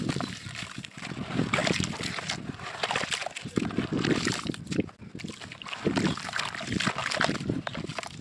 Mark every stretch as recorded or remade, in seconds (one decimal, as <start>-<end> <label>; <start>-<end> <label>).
0.0-8.2 recorded